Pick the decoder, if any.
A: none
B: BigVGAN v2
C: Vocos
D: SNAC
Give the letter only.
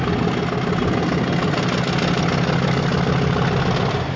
A